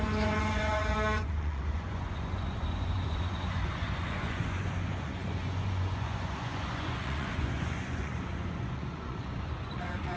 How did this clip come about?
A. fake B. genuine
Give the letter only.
A